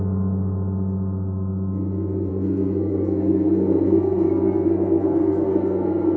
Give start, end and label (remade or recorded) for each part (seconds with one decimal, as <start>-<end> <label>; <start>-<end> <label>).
0.0-2.3 recorded; 2.3-6.2 remade